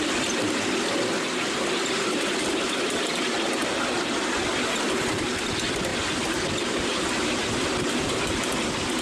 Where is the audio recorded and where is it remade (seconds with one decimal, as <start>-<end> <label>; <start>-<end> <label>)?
0.0-9.0 recorded